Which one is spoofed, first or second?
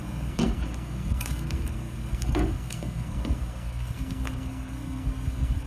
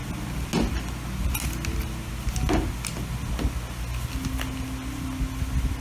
first